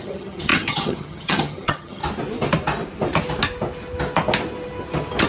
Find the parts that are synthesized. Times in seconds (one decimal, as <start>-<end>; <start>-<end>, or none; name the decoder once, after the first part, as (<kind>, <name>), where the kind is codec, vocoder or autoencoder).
0.0-2.0 (vocoder, HiFi-GAN)